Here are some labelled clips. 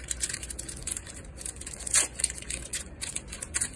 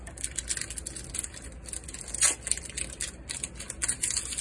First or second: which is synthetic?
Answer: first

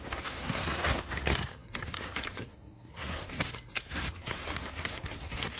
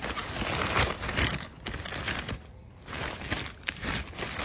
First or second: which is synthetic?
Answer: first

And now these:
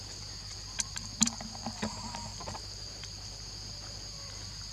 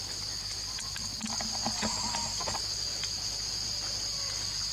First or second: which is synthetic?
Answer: first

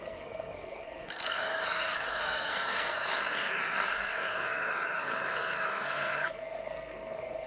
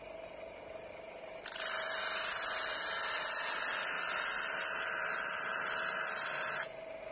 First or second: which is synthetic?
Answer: first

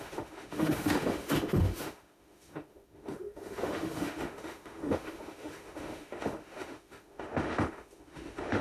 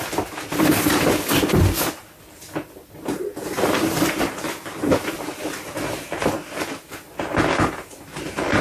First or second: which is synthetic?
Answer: first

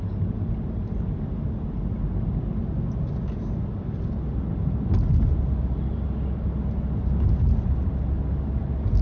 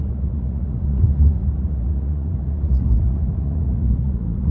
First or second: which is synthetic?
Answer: second